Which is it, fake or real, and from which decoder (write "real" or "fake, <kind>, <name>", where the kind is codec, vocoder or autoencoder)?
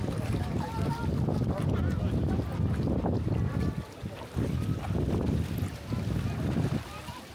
real